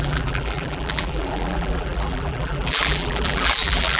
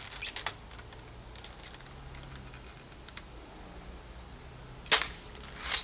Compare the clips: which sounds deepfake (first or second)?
first